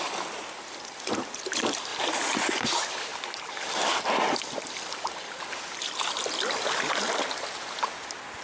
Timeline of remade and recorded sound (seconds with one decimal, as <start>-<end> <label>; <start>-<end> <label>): 0.0-8.4 recorded